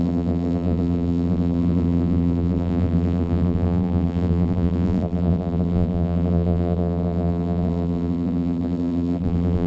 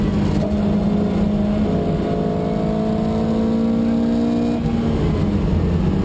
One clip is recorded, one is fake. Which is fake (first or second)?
first